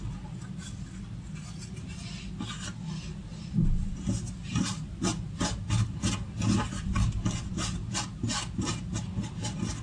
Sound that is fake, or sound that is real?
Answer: real